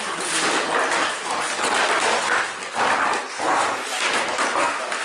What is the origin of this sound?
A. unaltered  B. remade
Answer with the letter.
A